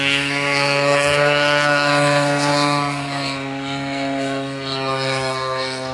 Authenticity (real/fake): fake